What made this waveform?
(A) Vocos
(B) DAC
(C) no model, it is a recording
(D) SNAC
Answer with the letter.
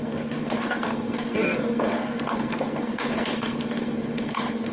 D